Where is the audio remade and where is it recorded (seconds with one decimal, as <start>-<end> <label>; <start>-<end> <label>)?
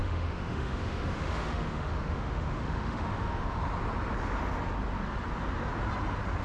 0.0-3.6 remade; 3.6-6.4 recorded